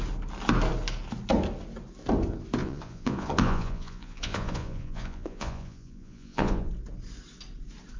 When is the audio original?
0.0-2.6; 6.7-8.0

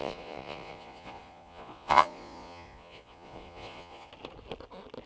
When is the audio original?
4.1-5.1

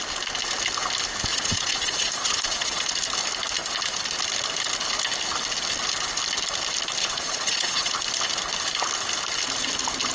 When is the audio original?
0.0-1.3; 2.9-7.0; 7.9-10.1

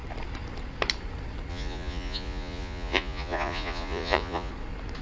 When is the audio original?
0.0-1.5; 4.5-5.0

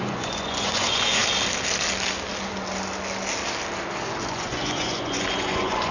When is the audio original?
1.2-4.3

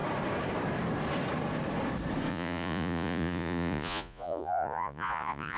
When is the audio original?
0.0-2.3

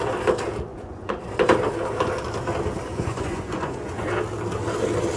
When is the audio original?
0.0-0.7; 1.2-2.9; 4.1-5.2